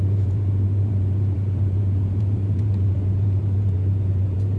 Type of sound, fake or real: fake